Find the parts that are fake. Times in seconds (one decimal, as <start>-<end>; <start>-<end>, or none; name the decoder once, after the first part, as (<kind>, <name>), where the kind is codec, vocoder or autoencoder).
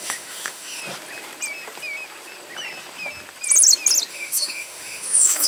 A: 0.0-0.8 (autoencoder, DAC-VAE); 4.1-5.5